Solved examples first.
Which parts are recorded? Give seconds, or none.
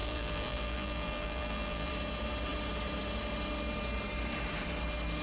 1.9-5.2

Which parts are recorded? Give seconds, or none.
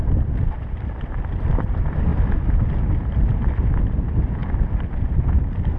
2.1-3.8; 4.4-5.8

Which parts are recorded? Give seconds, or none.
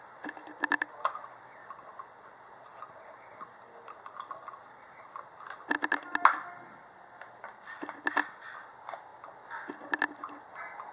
9.1-10.0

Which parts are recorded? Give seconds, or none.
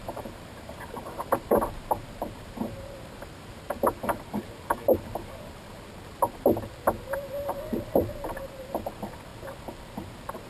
4.4-10.5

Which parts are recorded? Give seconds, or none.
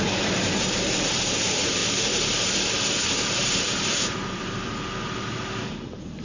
1.8-3.2; 4.7-5.6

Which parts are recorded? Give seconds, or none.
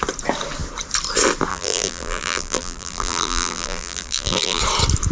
0.0-1.5; 4.6-5.1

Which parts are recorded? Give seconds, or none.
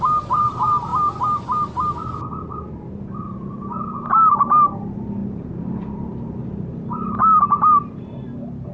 0.9-2.9